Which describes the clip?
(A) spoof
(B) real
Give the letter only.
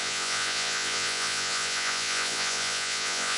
A